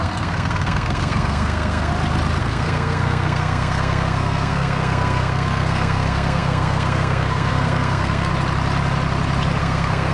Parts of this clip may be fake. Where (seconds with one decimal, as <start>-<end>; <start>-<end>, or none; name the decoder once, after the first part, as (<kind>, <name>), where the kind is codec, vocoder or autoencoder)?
0.0-1.9 (codec, SNAC); 2.4-8.3; 9.6-10.1

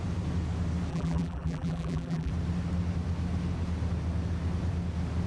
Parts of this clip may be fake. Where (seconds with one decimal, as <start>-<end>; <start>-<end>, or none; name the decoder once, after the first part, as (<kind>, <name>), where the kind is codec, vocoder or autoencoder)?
0.9-2.3 (vocoder, BigVGAN v2)

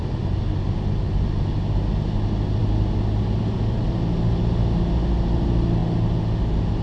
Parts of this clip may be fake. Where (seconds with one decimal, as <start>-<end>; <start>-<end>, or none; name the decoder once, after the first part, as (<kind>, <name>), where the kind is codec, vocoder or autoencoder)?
none